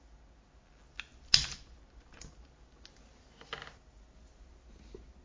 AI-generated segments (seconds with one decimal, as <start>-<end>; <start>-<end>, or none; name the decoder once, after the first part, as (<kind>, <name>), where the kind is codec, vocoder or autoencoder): none